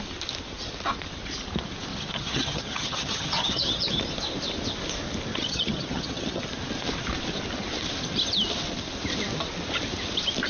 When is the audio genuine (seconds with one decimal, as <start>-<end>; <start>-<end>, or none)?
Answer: 0.0-1.9; 4.0-5.3; 6.4-10.5